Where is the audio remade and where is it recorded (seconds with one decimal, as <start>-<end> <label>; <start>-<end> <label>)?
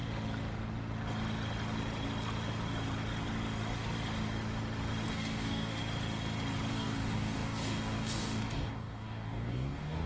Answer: 0.0-5.1 recorded; 5.1-5.8 remade; 5.8-6.7 recorded; 6.7-10.1 remade